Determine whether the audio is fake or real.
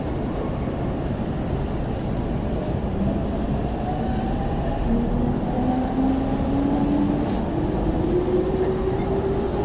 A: real